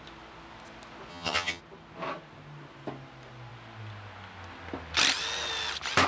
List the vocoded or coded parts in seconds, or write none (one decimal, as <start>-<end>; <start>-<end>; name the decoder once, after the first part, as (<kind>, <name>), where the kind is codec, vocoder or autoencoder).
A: 1.1-1.6 (vocoder, HiFi-GAN)